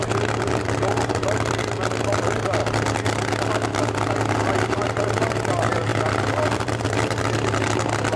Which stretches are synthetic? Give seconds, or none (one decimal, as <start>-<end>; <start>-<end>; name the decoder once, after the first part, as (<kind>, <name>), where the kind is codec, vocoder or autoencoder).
none